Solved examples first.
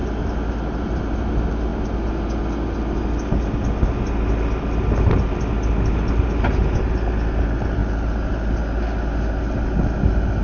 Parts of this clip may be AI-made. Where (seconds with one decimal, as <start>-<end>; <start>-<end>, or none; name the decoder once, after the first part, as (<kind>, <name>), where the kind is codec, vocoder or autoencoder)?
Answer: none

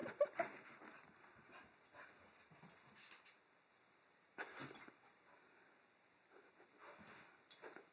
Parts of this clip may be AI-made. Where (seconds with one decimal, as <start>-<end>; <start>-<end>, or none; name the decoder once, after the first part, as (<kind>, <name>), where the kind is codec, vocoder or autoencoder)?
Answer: 0.0-3.7 (vocoder, BigVGAN v2); 4.6-5.4; 6.8-7.4

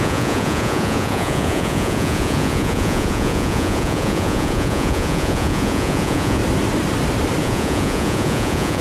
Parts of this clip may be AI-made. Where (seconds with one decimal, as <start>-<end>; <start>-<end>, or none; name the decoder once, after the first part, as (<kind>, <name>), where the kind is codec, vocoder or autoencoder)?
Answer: 0.0-6.4 (vocoder, Vocos); 7.4-8.8

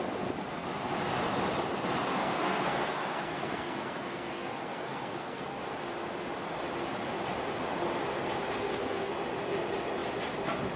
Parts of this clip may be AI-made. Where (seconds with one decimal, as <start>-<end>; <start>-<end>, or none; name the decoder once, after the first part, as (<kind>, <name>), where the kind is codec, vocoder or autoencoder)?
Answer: 2.1-5.6 (codec, SNAC); 8.6-9.1

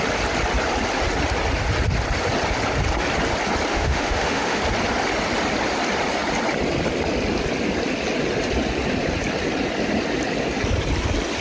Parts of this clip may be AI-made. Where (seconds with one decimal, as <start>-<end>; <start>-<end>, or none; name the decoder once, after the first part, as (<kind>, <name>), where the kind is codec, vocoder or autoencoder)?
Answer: 3.7-4.6 (autoencoder, DAC-VAE)